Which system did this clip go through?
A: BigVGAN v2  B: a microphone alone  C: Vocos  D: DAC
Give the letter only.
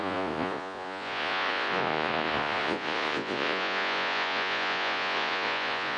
C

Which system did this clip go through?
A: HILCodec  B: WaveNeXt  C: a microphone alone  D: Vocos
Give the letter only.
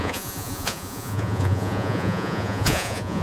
D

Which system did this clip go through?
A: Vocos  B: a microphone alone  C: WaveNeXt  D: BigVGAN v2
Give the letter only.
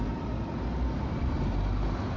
B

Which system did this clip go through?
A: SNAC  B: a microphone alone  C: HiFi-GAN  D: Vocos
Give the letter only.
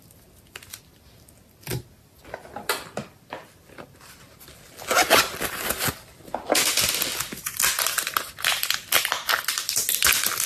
B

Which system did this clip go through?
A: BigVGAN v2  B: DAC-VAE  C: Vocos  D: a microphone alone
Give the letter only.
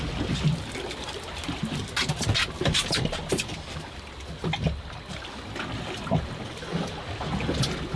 D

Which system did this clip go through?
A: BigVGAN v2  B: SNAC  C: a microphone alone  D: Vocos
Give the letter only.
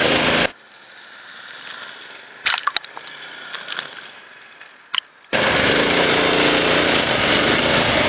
C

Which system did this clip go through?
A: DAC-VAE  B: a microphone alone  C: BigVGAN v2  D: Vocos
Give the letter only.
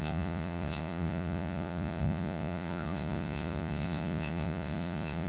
D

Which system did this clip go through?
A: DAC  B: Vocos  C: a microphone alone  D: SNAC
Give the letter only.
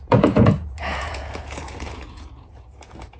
B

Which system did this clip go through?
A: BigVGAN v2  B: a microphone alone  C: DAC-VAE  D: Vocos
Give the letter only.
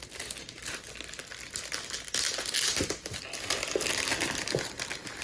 B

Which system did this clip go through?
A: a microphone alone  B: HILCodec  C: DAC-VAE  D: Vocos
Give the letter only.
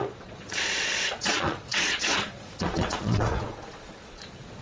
D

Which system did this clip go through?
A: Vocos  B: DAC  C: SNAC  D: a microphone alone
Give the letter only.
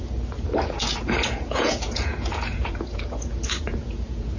A